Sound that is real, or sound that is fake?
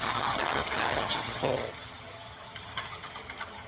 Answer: fake